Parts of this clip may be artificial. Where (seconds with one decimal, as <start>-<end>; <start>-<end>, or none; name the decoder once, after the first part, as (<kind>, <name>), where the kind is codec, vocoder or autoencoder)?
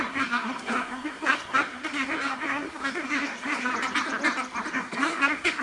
0.0-3.7 (codec, SNAC); 4.7-5.6